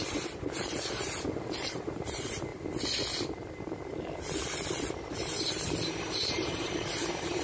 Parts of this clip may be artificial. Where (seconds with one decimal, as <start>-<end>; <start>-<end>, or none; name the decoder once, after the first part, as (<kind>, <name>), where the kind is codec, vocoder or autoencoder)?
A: 0.0-2.5 (vocoder, BigVGAN v2); 4.9-7.4